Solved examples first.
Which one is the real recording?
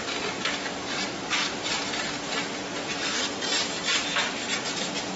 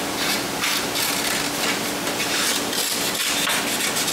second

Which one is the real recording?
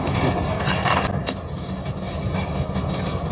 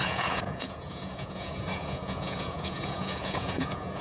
first